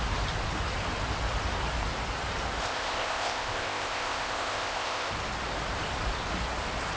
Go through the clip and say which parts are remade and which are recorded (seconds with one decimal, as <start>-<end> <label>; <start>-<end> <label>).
0.0-2.6 recorded; 2.6-5.1 remade; 5.1-7.0 recorded